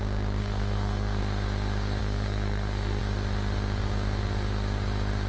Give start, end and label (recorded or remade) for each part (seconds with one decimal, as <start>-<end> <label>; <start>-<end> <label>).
0.0-0.4 recorded; 0.4-1.2 remade; 1.2-2.0 recorded; 2.0-3.0 remade; 3.0-5.3 recorded